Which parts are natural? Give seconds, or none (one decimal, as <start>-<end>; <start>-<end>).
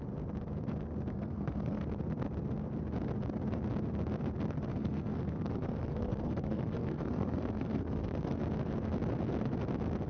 0.0-1.1; 1.8-4.7; 8.4-10.1